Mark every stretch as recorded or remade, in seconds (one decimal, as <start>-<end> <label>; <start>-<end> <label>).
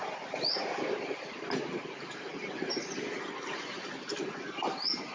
0.0-5.1 recorded